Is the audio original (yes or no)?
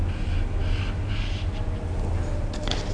yes